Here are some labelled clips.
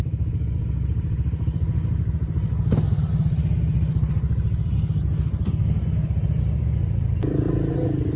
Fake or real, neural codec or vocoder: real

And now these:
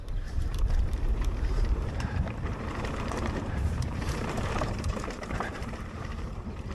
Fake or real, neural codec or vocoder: fake, vocoder, BigVGAN v2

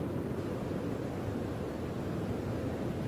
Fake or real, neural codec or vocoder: real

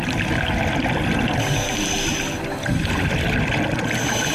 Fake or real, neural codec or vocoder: real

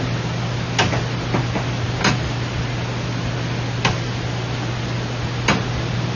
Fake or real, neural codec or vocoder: real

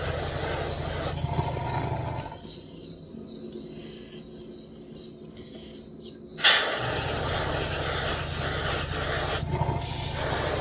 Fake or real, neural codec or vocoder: real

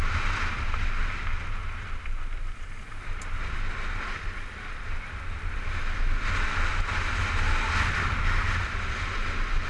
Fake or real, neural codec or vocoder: real